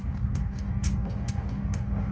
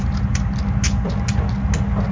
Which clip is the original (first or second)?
second